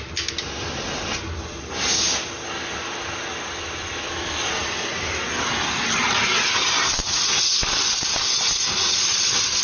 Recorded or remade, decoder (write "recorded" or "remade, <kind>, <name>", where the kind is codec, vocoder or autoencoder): recorded